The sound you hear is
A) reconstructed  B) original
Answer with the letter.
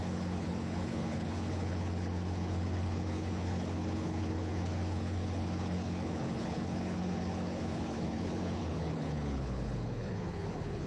A